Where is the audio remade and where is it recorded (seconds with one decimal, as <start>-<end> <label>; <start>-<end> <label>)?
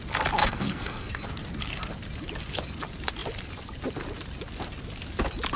0.0-0.4 recorded; 0.4-1.2 remade; 1.2-5.6 recorded